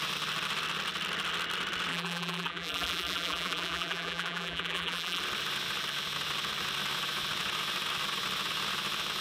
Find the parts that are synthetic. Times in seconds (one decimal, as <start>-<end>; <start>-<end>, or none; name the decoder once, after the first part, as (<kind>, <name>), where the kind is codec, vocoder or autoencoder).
1.9-5.2 (vocoder, BigVGAN v2)